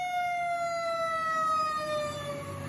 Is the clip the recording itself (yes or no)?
yes